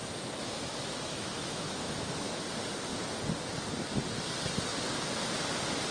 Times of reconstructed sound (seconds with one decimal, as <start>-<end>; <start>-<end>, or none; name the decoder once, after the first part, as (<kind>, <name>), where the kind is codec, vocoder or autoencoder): 0.0-2.4 (autoencoder, DAC-VAE)